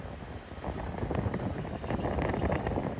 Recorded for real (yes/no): yes